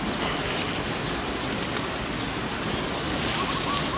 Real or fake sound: real